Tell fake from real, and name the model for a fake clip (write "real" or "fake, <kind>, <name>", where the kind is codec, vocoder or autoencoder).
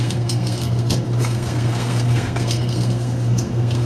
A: fake, codec, SNAC